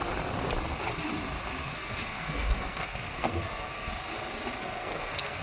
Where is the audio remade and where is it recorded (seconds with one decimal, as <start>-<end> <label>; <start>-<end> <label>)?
0.0-1.6 recorded; 1.6-3.9 remade; 3.9-4.6 recorded; 4.6-5.4 remade